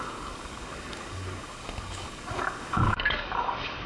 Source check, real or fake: fake